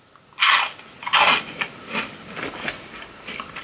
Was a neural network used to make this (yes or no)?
no